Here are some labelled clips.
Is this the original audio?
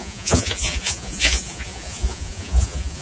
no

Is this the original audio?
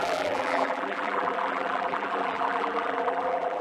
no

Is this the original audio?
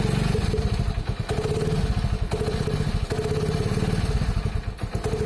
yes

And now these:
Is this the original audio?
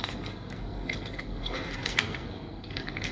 no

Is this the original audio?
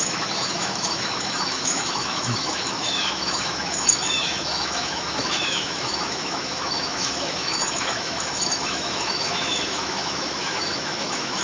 no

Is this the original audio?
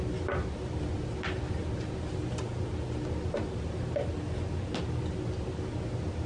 yes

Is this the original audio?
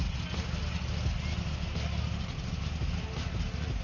yes